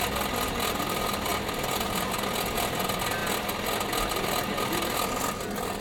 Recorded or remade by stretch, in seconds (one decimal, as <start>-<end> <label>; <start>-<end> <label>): 0.0-5.8 recorded